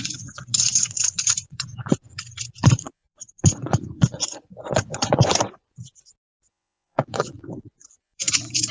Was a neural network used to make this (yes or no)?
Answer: yes